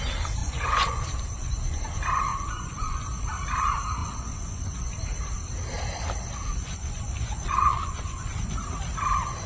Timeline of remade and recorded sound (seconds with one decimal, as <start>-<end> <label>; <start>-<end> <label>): 0.0-0.4 recorded; 0.4-1.8 remade; 1.8-2.3 recorded; 2.3-3.0 remade; 3.0-4.0 recorded; 4.0-4.9 remade; 4.9-6.4 recorded; 6.4-8.5 remade; 8.5-9.5 recorded